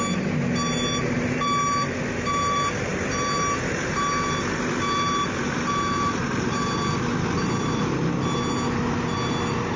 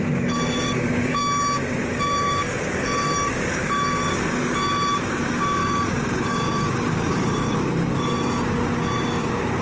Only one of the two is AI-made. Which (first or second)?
second